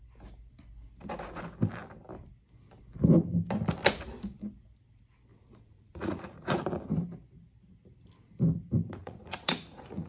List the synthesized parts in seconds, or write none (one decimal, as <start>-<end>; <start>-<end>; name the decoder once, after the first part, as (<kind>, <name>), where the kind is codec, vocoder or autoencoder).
5.3-6.6 (vocoder, Vocos); 9.0-10.1